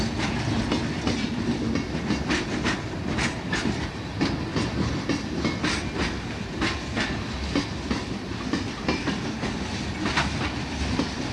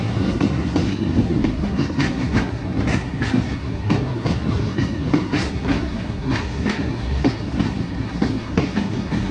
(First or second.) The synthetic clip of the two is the second